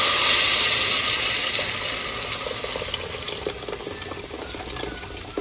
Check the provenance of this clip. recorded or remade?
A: recorded